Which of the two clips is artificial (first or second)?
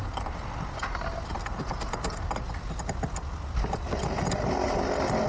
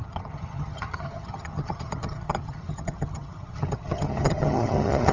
second